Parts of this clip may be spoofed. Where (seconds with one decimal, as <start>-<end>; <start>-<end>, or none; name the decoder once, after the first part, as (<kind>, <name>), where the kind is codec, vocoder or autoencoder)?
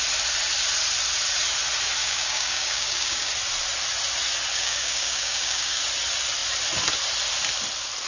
2.0-3.3 (codec, DAC); 4.5-5.8